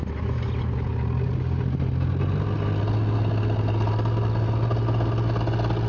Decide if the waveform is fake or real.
real